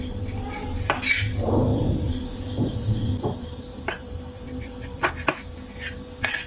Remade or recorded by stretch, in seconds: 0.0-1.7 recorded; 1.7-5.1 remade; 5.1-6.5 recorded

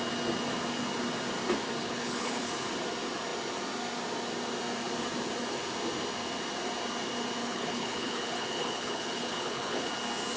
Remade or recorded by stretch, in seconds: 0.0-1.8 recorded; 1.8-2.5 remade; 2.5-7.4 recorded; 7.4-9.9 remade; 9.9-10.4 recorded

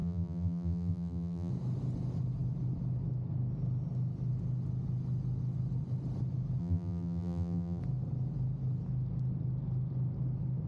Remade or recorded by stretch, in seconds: 0.0-1.5 remade; 1.5-6.6 recorded; 6.6-7.8 remade; 7.8-10.7 recorded

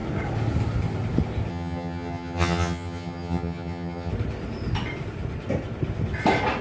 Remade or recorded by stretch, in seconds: 0.0-1.5 recorded; 1.5-4.1 remade; 4.1-6.6 recorded

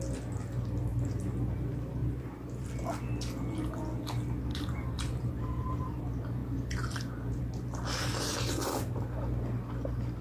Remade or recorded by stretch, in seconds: 0.0-2.0 recorded; 2.0-2.7 remade; 2.7-4.5 recorded; 4.5-6.0 remade; 6.0-6.4 recorded; 6.4-7.4 remade; 7.4-10.2 recorded

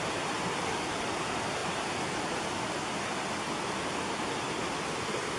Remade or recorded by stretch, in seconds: 0.0-5.4 recorded

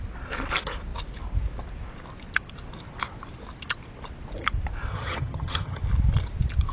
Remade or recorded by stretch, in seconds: 0.0-4.9 recorded; 4.9-5.8 remade; 5.8-6.7 recorded

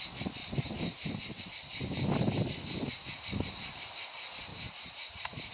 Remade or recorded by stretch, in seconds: 0.0-0.4 recorded; 0.4-1.4 remade; 1.4-4.5 recorded; 4.5-5.5 remade